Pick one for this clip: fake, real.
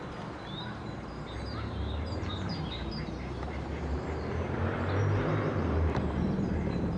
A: fake